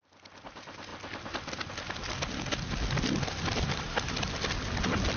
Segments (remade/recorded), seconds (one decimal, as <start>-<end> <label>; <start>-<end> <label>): 0.0-5.2 recorded